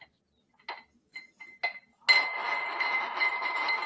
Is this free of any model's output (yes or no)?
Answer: yes